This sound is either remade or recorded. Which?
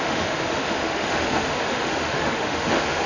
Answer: remade